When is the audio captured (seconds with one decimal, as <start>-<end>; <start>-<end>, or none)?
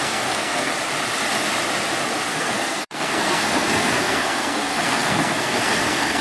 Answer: 0.7-2.3